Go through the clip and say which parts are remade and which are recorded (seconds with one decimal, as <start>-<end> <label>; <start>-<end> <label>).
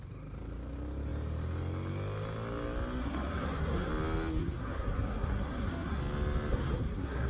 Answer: 0.0-3.0 recorded; 3.0-3.9 remade; 3.9-4.4 recorded; 4.4-6.0 remade; 6.0-6.5 recorded; 6.5-7.3 remade